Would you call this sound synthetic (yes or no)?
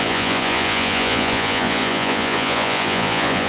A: yes